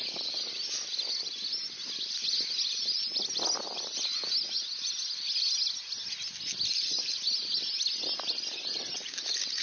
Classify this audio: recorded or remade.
recorded